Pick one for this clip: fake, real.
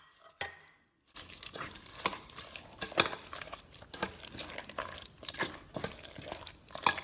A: real